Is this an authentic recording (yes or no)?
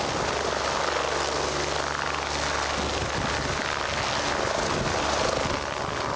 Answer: yes